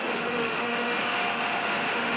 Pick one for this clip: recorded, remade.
remade